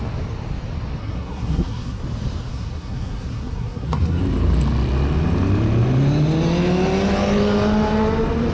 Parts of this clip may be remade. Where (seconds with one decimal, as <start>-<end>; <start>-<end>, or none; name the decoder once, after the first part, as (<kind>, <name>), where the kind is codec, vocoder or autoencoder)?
1.0-2.0 (codec, SNAC); 2.5-4.2